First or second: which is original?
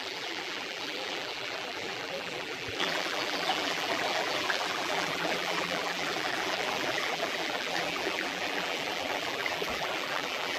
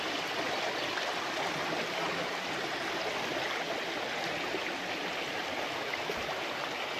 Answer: second